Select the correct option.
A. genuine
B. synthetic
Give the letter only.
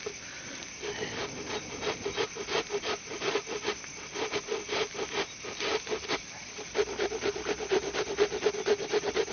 A